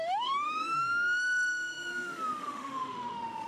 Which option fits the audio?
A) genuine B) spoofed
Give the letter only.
B